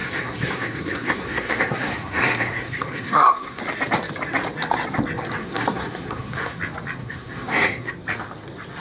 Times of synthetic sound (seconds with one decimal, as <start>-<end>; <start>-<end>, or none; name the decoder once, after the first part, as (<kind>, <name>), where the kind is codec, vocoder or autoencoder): 0.0-3.6 (codec, SNAC); 5.4-6.6; 7.0-7.9